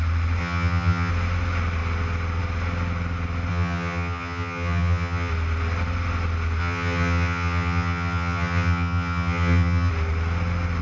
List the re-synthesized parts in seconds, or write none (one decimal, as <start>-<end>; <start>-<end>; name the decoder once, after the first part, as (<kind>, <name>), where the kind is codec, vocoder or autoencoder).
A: 0.4-1.1 (vocoder, HiFi-GAN); 3.5-5.3; 6.6-9.9

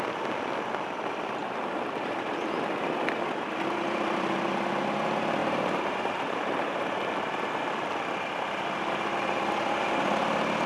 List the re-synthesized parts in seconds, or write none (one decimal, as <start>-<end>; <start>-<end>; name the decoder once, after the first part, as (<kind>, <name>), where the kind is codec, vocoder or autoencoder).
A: 5.4-7.1 (vocoder, BigVGAN v2)

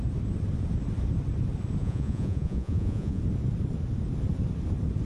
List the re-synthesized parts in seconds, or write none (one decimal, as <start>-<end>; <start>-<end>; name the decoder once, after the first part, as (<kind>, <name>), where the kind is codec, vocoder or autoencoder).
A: 1.8-3.2 (vocoder, Vocos)

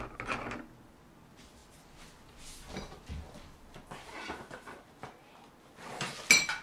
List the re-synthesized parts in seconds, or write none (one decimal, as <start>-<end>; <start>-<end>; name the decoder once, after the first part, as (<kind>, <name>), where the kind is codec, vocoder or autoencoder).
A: none

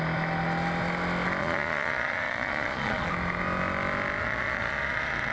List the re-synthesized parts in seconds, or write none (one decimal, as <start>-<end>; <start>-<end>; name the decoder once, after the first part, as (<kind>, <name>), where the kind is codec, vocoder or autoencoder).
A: 1.4-3.1 (vocoder, Vocos); 4.2-5.3

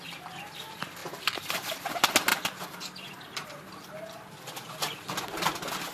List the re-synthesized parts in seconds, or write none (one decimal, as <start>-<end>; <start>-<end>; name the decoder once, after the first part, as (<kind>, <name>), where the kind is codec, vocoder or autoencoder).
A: 1.0-1.9 (vocoder, BigVGAN v2); 2.3-5.1

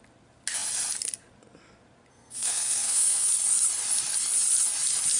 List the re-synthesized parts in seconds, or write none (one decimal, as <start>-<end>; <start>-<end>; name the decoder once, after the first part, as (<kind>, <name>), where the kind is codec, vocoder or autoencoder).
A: 2.1-3.3 (codec, SNAC)